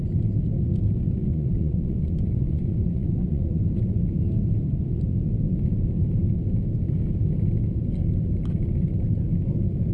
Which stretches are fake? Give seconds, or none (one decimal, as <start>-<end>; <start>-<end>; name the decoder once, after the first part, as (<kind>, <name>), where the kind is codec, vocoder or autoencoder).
1.2-3.6 (vocoder, Vocos)